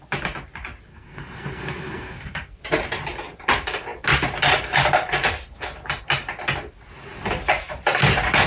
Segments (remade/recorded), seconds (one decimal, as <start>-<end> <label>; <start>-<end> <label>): 0.0-0.9 recorded; 0.9-2.6 remade; 2.6-8.5 recorded